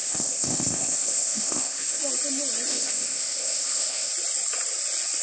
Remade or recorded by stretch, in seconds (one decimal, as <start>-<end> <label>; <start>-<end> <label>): 0.0-2.0 remade; 2.0-2.7 recorded; 2.7-4.1 remade; 4.1-5.2 recorded